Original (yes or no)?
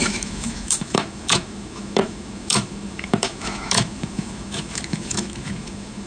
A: no